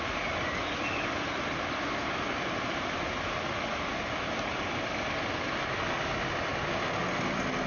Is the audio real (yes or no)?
yes